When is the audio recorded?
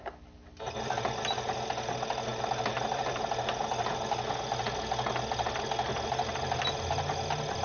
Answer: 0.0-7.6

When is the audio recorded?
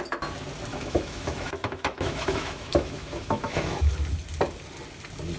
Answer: 0.0-0.7; 3.9-5.4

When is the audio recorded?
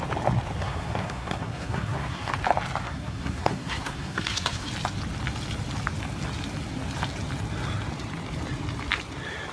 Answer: 0.0-0.6; 2.3-2.8; 4.7-9.5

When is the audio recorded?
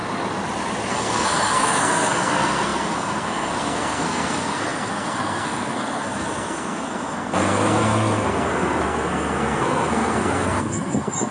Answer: 0.0-0.9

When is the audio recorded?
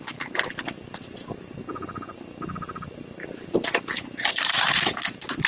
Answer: 0.0-5.5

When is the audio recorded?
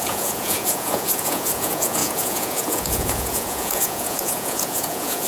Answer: none